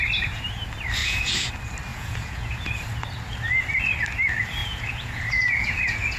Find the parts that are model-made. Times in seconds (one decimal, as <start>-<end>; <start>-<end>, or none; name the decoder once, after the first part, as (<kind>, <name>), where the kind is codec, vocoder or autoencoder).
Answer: 1.0-1.5 (vocoder, Vocos); 1.9-2.8; 4.6-6.2